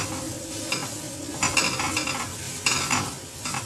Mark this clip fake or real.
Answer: real